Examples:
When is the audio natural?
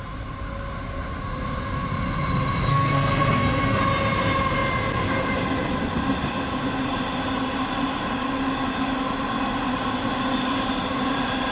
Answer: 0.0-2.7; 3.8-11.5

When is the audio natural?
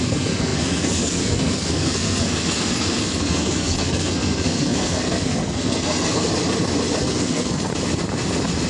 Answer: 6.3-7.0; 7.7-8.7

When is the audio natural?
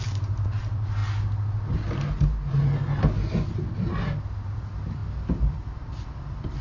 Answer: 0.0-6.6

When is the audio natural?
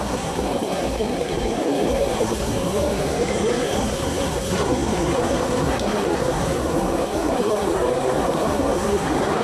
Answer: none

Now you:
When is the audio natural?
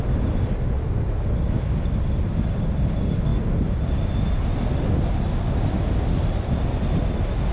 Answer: 0.0-7.5